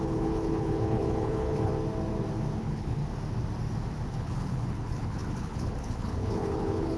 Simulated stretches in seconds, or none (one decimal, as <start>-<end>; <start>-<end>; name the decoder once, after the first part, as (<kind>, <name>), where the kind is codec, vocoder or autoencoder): 0.0-1.7 (codec, HILCodec); 2.6-3.0; 4.1-7.0